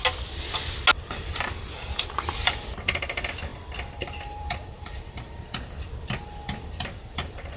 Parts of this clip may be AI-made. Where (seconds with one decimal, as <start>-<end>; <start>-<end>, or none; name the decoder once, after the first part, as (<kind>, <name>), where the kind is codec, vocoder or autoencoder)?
1.3-7.6 (vocoder, BigVGAN v2)